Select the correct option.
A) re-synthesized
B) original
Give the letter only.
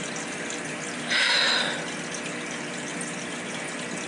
B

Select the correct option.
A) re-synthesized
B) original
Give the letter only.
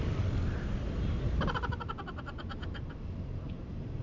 B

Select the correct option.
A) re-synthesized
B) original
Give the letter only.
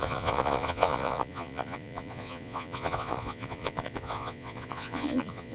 A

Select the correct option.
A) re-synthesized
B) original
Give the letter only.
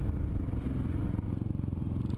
B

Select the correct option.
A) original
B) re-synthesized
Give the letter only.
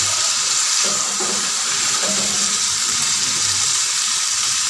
B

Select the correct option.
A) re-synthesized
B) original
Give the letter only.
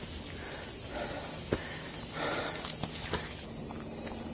B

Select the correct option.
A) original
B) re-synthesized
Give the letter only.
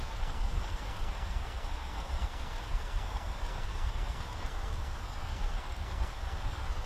B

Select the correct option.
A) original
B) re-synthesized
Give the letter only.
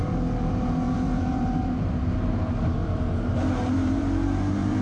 B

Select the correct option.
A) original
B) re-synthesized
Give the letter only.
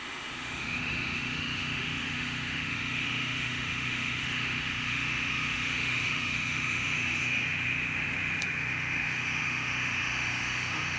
B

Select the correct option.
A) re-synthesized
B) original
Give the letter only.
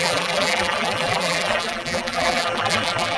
A